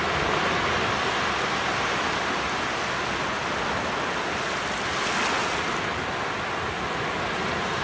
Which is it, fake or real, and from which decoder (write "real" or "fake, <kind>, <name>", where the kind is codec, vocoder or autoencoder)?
real